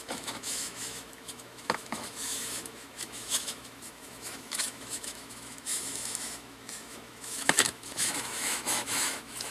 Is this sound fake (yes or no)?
yes